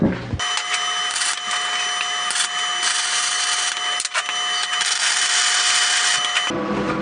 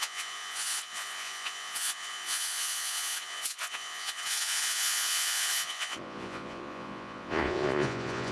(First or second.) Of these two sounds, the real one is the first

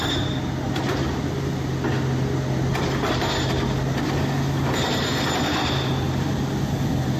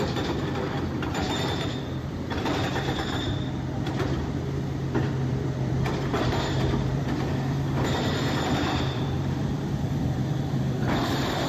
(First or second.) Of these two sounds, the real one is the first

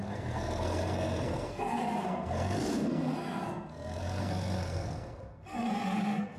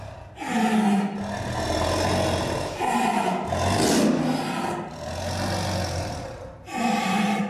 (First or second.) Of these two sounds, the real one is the second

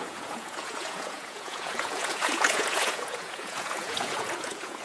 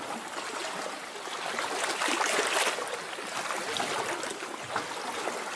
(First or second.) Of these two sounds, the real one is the second